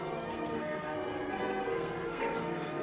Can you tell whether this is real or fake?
fake